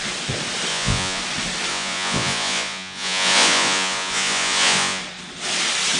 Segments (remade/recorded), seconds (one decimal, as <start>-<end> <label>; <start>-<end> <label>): 0.0-0.7 recorded; 0.7-1.2 remade; 1.2-1.7 recorded; 1.7-5.0 remade; 5.0-6.0 recorded